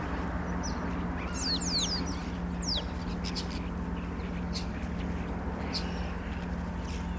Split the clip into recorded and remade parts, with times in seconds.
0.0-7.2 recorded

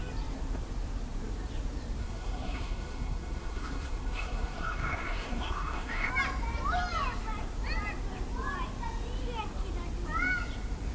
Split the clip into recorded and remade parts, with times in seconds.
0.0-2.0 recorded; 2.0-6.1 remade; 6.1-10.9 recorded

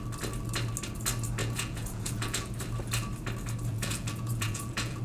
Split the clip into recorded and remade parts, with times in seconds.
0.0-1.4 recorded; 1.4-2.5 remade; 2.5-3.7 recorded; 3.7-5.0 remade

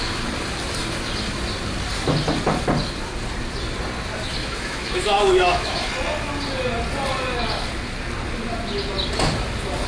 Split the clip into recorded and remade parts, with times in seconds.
0.0-4.4 recorded; 4.4-5.9 remade; 5.9-9.9 recorded